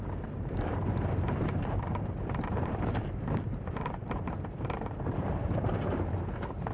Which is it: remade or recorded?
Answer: remade